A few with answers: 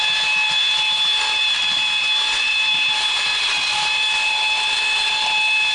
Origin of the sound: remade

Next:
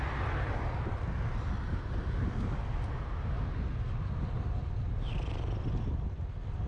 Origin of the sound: recorded